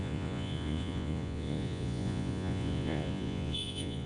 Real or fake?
fake